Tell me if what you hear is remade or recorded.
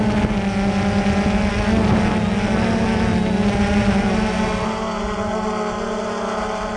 recorded